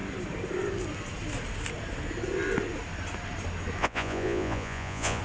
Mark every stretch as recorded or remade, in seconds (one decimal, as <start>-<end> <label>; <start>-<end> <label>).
0.0-3.8 recorded; 3.8-5.2 remade